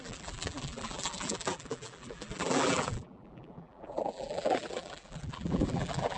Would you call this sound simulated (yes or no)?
yes